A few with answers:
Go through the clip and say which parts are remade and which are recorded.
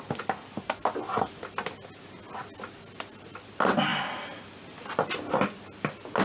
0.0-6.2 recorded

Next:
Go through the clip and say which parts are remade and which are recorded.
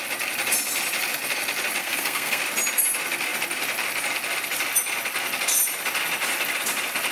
0.0-1.8 recorded; 1.8-2.4 remade; 2.4-7.1 recorded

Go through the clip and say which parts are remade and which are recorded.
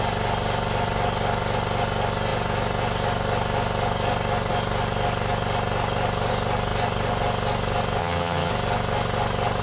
0.0-8.0 recorded; 8.0-8.5 remade; 8.5-9.6 recorded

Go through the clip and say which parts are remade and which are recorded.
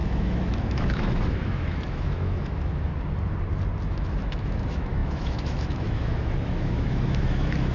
0.0-2.9 remade; 2.9-3.8 recorded; 3.8-7.7 remade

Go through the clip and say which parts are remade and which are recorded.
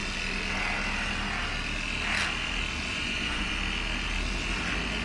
0.0-2.9 recorded; 2.9-3.5 remade; 3.5-5.0 recorded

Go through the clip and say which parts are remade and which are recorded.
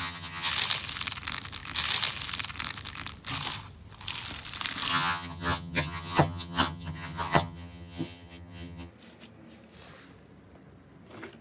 0.0-0.5 remade; 0.5-4.9 recorded; 4.9-8.9 remade; 8.9-11.4 recorded